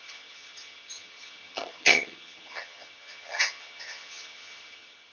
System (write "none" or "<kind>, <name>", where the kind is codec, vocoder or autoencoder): vocoder, HiFi-GAN